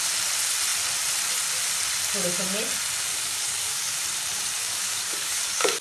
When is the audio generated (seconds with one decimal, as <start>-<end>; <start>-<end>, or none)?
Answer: 3.1-4.0; 4.6-5.8